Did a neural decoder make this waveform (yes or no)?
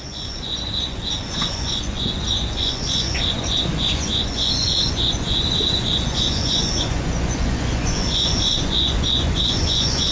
yes